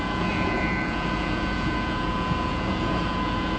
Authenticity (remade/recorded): remade